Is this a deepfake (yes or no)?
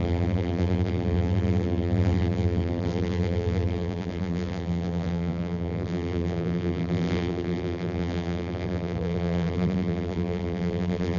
yes